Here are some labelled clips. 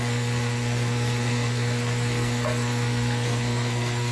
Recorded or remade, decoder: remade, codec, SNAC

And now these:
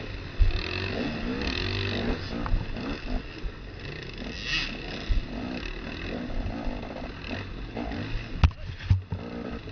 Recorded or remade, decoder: recorded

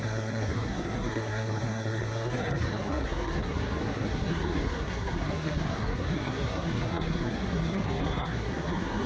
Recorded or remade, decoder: remade, codec, SNAC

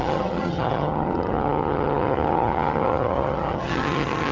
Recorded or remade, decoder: remade, vocoder, HiFi-GAN